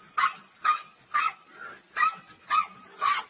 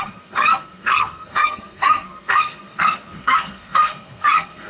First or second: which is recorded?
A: first